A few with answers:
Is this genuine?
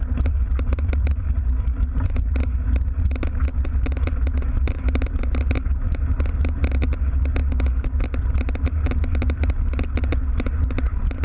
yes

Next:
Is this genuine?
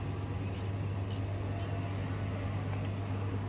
yes